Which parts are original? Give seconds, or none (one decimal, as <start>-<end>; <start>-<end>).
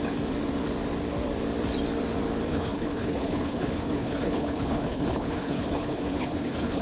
0.0-2.5